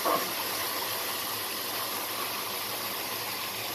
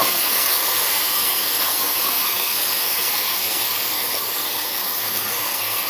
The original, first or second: first